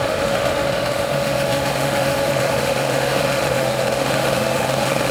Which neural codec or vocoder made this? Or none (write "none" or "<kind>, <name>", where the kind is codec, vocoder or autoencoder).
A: autoencoder, DAC-VAE